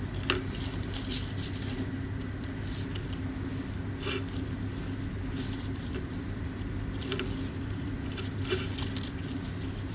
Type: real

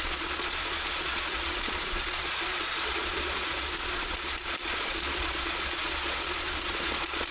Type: fake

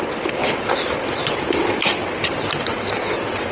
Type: real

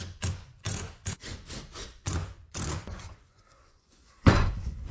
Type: fake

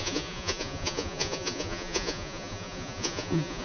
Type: fake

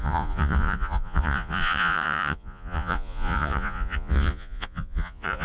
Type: fake